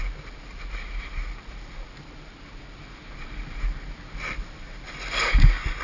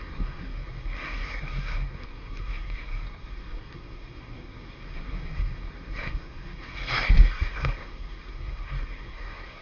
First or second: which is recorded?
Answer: first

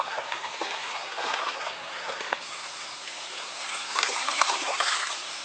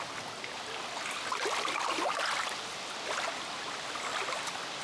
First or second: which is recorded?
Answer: second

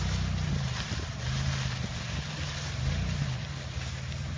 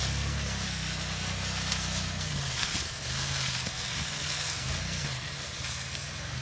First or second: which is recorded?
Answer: first